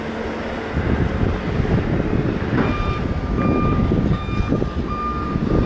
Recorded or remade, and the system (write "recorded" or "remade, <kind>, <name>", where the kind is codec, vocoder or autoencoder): recorded